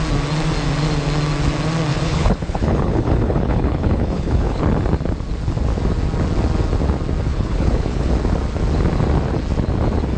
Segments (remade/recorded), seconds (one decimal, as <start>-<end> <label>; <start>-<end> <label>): 0.0-1.9 recorded; 1.9-4.6 remade; 4.6-7.3 recorded; 7.3-8.1 remade; 8.1-10.2 recorded